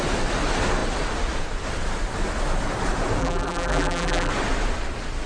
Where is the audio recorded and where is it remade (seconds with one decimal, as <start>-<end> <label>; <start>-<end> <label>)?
0.0-3.2 recorded; 3.2-4.3 remade; 4.3-5.3 recorded